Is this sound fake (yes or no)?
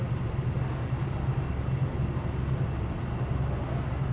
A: no